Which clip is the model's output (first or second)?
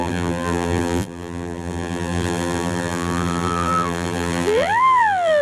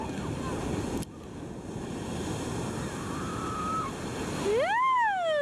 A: first